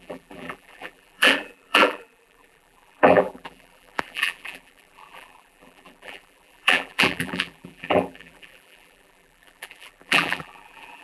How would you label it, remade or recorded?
remade